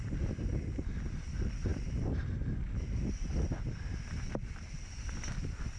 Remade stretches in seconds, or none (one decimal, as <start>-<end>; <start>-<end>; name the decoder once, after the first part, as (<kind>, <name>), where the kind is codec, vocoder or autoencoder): none